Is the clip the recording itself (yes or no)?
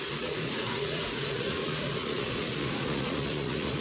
no